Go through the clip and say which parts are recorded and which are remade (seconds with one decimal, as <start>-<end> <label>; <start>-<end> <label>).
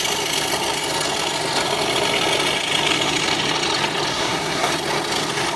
0.0-4.1 recorded; 4.1-4.7 remade; 4.7-5.6 recorded